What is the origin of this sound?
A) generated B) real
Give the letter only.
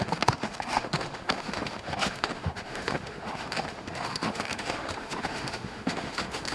A